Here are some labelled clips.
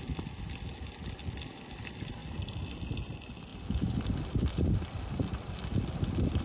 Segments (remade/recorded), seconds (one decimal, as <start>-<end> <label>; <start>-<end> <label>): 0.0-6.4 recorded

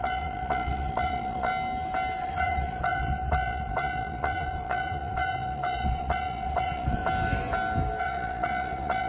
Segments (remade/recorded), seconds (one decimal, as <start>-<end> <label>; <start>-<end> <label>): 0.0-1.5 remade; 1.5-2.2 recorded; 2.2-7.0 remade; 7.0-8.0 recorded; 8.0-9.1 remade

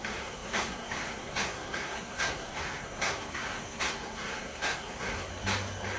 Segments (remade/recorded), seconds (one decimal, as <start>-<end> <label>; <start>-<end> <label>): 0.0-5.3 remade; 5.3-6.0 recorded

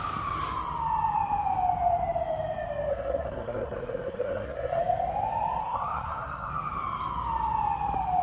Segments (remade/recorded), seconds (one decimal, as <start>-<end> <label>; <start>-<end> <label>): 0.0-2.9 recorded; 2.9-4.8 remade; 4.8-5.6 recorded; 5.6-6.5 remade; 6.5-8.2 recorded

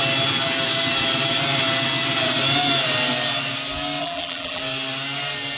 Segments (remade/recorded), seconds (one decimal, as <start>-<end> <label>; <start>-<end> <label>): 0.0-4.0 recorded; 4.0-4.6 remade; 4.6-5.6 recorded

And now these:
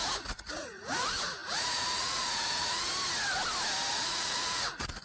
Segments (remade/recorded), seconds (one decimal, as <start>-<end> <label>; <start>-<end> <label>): 0.0-2.9 remade; 2.9-3.9 recorded; 3.9-5.0 remade

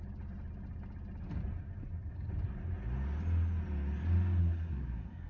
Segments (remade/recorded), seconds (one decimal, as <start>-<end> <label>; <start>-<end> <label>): 0.0-4.4 recorded; 4.4-5.3 remade

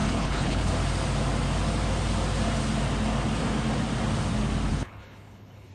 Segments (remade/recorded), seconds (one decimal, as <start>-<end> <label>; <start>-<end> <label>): 0.0-0.7 remade; 0.7-4.7 recorded; 4.7-5.7 remade